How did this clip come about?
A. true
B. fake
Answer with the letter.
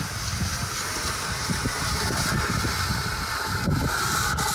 A